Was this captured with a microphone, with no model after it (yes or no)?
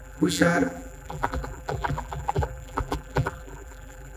no